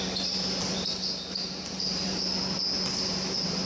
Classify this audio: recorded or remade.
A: recorded